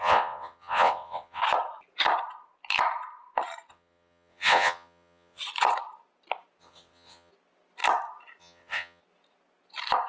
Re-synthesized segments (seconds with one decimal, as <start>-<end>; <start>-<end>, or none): 0.0-1.4; 3.7-5.4; 6.6-7.3; 8.4-9.0